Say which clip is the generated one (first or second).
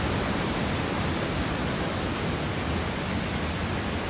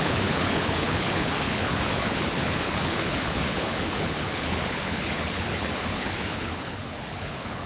second